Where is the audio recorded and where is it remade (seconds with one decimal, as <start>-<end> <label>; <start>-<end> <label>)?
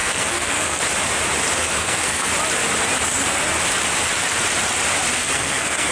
0.0-0.8 remade; 0.8-1.6 recorded; 1.6-2.3 remade; 2.3-5.2 recorded; 5.2-5.9 remade